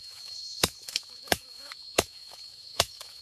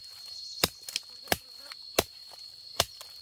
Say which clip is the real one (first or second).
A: second